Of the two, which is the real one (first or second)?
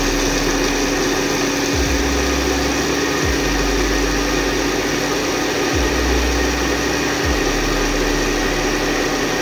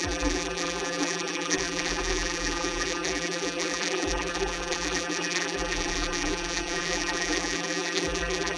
first